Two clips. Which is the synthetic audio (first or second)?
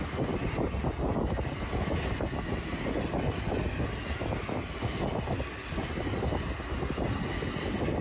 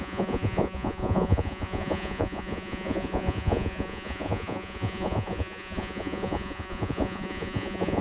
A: second